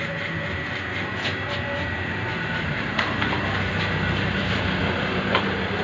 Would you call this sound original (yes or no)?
no